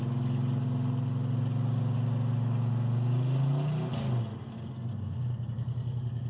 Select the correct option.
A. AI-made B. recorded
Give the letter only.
B